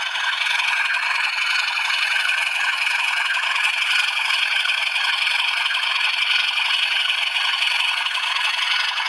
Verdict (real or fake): fake